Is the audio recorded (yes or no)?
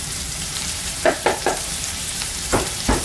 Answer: no